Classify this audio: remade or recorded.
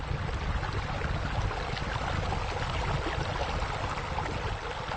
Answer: recorded